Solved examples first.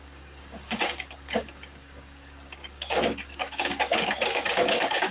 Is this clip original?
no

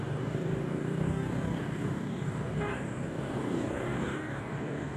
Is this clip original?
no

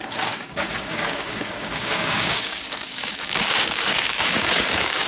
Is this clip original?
no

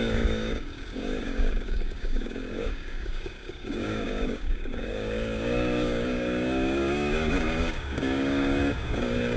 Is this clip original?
no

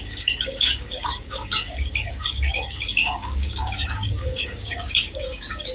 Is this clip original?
no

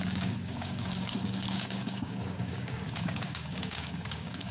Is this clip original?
no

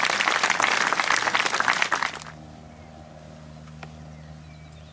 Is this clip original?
yes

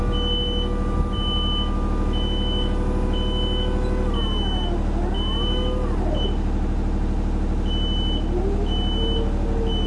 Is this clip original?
yes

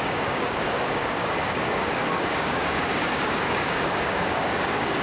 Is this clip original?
no